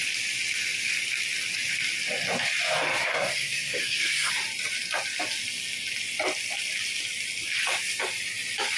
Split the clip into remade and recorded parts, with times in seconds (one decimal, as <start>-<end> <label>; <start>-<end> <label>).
0.0-3.0 recorded; 3.0-4.3 remade; 4.3-8.8 recorded